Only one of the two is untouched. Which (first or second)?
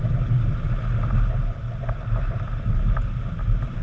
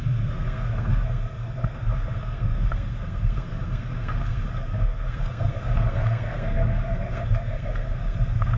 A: first